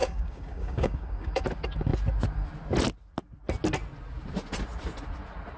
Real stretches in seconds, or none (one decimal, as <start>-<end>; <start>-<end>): 1.4-5.6